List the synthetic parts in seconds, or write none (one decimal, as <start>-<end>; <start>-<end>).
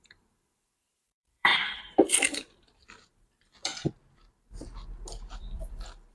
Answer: 0.0-3.7; 5.2-6.1